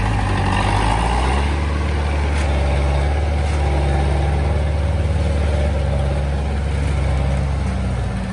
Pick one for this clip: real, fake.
real